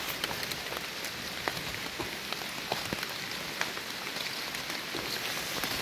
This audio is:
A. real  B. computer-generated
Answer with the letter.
A